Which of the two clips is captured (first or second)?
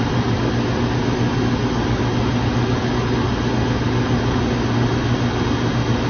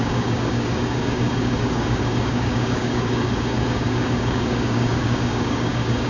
first